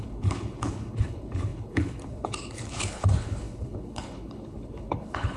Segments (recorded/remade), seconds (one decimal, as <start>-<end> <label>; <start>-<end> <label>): 0.0-5.4 remade